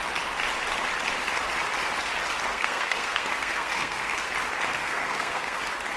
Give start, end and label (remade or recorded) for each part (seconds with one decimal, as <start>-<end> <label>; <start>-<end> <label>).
0.0-2.5 recorded; 2.5-4.3 remade; 4.3-4.8 recorded; 4.8-5.6 remade; 5.6-6.0 recorded